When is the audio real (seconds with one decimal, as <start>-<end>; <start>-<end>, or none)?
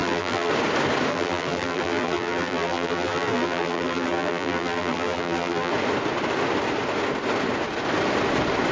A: 0.5-1.1; 5.7-8.7